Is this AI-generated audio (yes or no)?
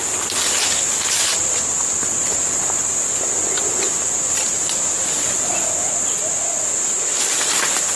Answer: no